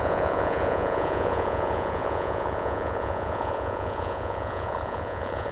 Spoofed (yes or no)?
yes